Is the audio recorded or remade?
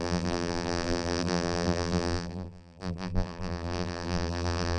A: remade